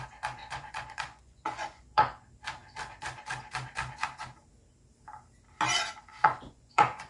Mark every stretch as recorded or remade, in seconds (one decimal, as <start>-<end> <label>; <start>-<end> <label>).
0.0-0.4 recorded; 0.4-2.2 remade; 2.2-6.1 recorded; 6.1-7.1 remade